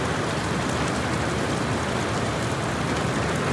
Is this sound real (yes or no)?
yes